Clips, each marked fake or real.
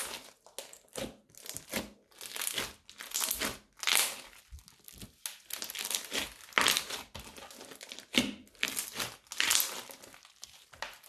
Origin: real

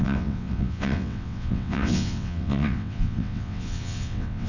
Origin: fake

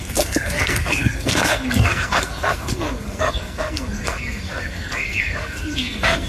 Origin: fake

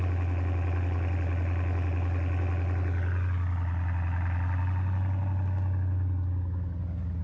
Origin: real